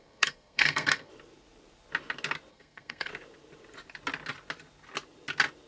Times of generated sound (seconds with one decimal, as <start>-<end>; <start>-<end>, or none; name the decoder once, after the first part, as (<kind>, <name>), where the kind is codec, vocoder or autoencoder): 0.0-1.1 (codec, SNAC); 2.5-3.1